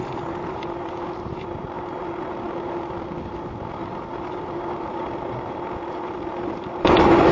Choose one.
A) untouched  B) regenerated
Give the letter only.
B